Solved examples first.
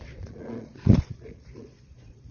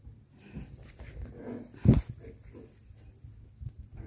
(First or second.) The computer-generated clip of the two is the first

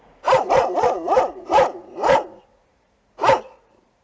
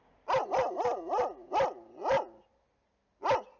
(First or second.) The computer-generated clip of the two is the first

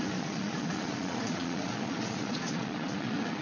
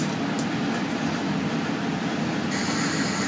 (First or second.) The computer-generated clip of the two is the first